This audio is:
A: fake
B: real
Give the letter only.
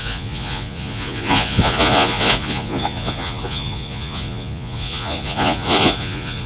A